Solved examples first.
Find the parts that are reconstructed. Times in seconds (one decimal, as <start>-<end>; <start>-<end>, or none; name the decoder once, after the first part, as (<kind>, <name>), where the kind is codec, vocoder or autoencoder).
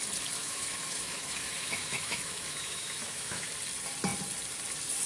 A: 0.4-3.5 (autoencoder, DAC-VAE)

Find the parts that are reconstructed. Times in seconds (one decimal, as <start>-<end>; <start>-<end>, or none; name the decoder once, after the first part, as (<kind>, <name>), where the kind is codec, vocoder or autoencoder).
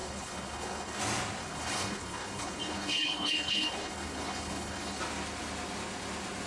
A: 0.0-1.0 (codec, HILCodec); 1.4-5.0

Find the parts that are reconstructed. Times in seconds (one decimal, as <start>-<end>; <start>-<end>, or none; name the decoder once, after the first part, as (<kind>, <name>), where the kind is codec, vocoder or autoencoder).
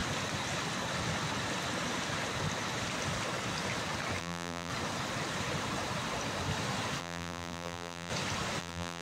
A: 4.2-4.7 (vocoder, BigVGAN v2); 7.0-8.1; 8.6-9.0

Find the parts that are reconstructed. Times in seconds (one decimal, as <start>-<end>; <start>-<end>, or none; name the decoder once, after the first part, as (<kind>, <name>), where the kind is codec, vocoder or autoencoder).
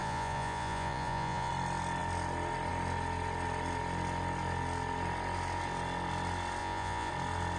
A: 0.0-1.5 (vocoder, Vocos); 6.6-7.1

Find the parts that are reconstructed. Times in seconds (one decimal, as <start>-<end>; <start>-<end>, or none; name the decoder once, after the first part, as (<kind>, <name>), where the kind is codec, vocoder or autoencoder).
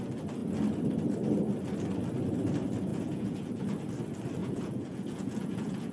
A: 2.9-3.6 (vocoder, Vocos); 4.4-5.9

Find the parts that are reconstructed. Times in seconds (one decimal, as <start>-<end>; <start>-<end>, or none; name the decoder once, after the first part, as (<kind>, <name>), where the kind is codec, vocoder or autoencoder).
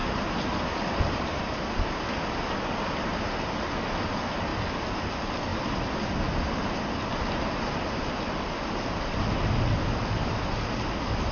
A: 0.0-1.4 (vocoder, BigVGAN v2)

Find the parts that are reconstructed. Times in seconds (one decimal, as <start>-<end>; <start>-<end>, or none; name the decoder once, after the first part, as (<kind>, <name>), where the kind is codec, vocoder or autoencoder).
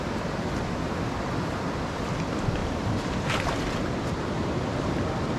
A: 2.6-5.0 (vocoder, BigVGAN v2)